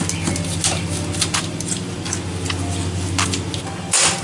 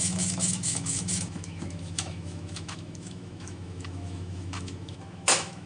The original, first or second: first